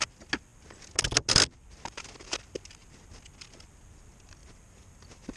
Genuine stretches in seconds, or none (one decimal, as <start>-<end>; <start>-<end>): 0.0-4.4